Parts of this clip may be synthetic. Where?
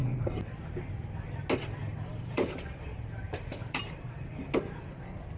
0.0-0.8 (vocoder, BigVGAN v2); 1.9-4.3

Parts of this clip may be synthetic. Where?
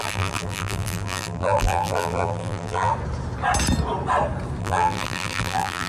0.0-2.9 (vocoder, BigVGAN v2); 4.6-5.9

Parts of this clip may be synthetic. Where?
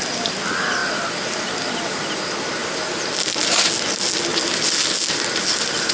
0.8-1.4 (vocoder, BigVGAN v2); 2.6-3.7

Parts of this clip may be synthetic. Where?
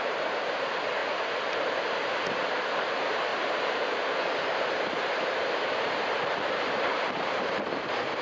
0.0-1.0 (vocoder, BigVGAN v2); 2.3-8.2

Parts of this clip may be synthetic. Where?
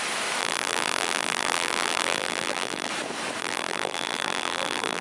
0.4-2.9 (vocoder, BigVGAN v2); 3.4-5.0